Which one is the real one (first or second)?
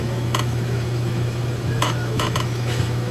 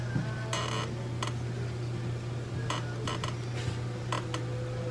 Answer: second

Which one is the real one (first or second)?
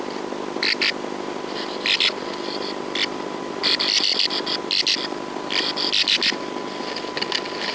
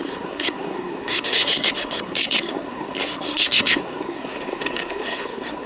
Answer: first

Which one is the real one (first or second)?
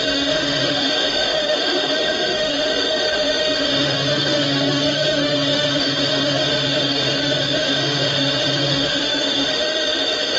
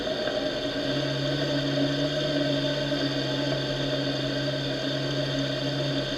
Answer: second